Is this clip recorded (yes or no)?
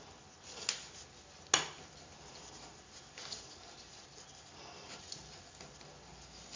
yes